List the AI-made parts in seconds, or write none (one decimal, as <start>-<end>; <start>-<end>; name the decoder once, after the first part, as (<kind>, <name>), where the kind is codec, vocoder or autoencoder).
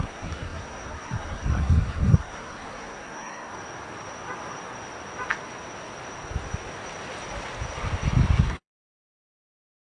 0.0-3.5 (codec, SNAC); 8.4-10.0